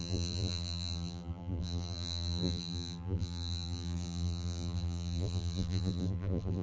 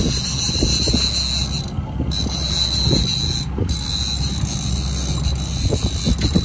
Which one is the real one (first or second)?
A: second